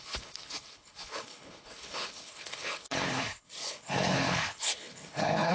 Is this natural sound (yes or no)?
no